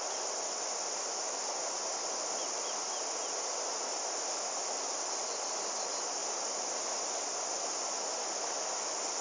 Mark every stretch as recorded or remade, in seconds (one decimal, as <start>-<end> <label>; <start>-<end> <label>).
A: 0.0-9.2 recorded